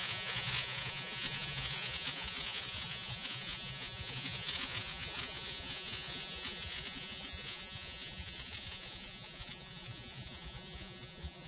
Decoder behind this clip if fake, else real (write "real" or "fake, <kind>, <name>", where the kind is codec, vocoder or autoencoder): fake, vocoder, Vocos